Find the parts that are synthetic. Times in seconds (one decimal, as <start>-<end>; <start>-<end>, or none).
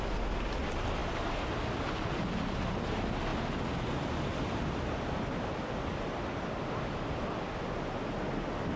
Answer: none